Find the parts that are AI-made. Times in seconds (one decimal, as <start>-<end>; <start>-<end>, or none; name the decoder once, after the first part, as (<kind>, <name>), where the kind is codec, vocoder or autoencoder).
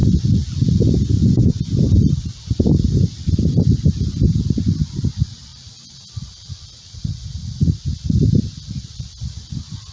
0.9-5.5 (vocoder, BigVGAN v2); 8.3-9.9